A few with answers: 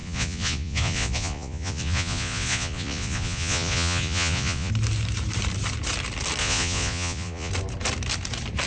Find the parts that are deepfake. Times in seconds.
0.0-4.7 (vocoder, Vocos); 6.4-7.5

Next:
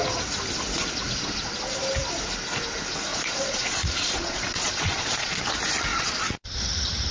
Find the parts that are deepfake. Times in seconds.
3.1-5.4 (vocoder, Vocos); 5.9-6.6

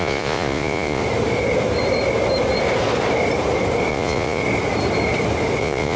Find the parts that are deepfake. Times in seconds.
0.0-1.0 (vocoder, Vocos); 3.9-4.4; 5.6-6.0

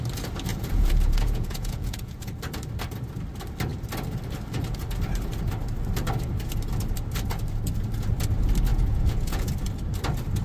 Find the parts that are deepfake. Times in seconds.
0.5-2.3 (vocoder, Vocos); 8.7-9.5

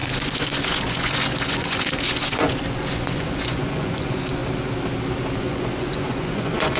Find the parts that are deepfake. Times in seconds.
0.0-4.4 (vocoder, Vocos); 5.4-6.8

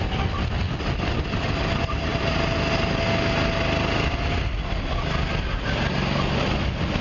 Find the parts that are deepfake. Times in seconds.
none